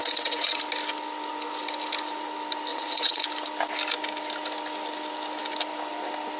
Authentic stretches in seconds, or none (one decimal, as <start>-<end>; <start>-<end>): 0.6-2.7; 3.2-6.4